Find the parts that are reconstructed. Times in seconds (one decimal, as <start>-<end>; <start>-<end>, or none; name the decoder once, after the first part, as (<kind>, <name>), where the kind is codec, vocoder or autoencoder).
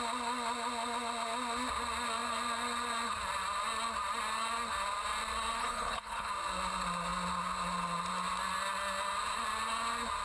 5.6-6.3 (codec, HILCodec)